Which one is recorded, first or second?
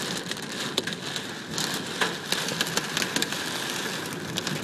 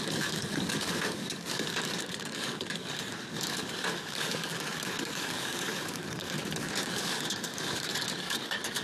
first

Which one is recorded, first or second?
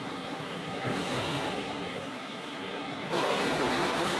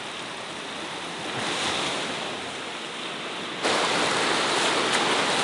second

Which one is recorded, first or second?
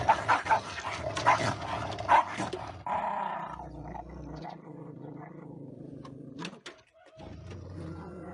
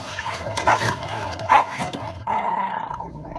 first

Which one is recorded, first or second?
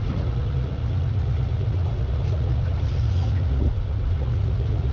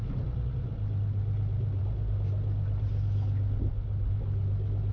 second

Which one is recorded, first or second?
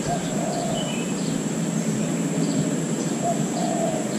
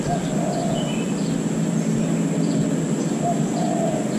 second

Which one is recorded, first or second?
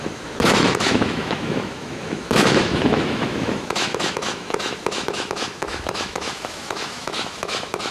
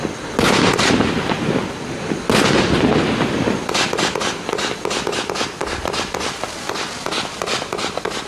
second